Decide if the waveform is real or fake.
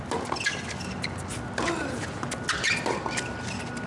real